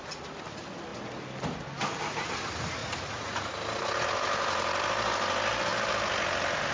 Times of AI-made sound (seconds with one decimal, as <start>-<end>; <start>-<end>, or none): 2.8-3.5